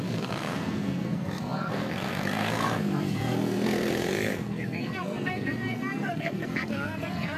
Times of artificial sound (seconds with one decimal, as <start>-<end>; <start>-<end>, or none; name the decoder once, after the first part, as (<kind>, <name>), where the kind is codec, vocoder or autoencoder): 0.0-7.4 (codec, SNAC)